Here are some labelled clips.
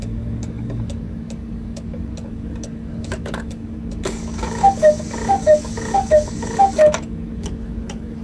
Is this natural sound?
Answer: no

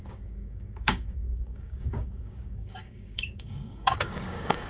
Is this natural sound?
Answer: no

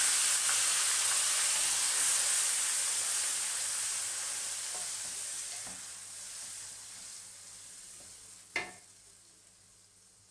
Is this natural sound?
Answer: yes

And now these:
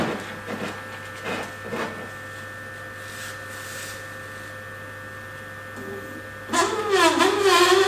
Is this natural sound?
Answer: yes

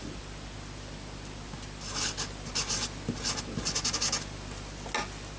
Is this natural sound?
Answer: yes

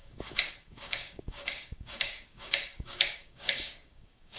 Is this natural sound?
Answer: no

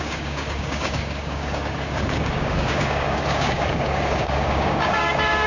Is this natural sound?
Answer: no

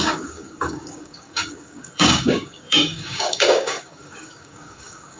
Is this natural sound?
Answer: no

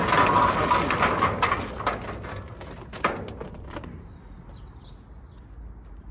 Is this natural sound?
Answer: yes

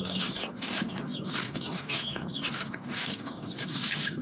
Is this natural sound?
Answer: no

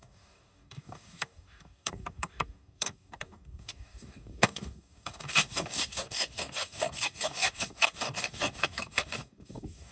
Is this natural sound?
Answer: no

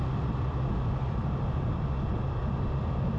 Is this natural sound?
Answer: yes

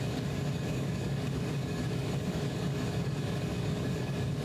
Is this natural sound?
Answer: no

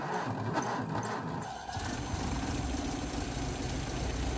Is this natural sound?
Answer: yes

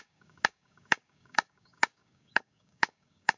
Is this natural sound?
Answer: no